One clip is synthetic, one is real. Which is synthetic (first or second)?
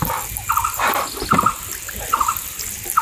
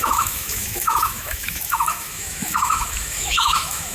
second